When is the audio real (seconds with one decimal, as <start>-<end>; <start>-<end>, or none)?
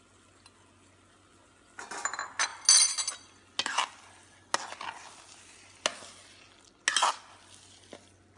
0.0-8.4